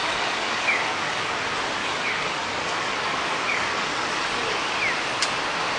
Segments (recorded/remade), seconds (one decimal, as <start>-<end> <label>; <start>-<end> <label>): 0.0-1.3 remade; 1.3-1.8 recorded; 1.8-4.8 remade; 4.8-5.8 recorded